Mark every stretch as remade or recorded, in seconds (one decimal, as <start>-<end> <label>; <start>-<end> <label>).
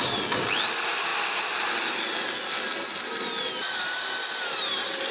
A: 0.0-5.1 recorded